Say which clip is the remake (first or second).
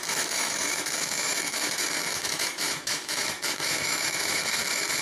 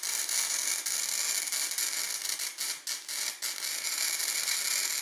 first